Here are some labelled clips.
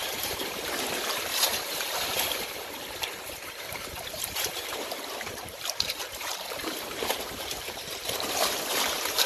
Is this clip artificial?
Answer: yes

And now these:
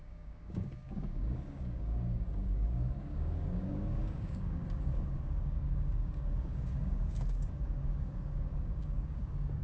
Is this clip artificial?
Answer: yes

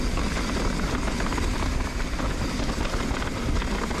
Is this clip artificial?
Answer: no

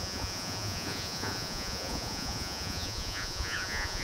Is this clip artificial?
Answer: yes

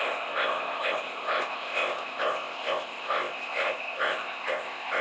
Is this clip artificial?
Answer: yes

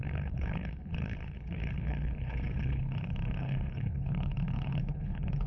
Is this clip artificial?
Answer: yes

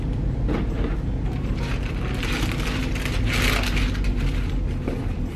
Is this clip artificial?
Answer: no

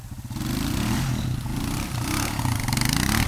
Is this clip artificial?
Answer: no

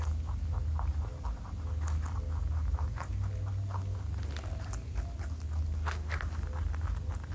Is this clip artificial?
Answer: no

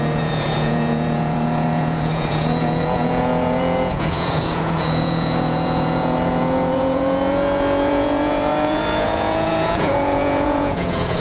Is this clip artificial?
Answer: yes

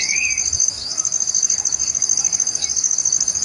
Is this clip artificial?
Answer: yes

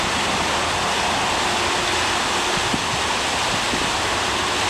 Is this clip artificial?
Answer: yes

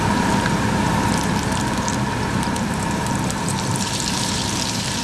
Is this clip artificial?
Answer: yes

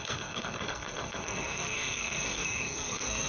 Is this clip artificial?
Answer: yes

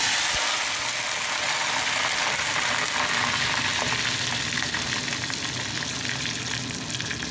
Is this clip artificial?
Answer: no